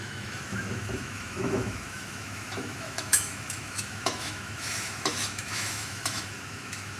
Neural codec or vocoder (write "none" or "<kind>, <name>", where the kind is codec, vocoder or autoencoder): autoencoder, DAC-VAE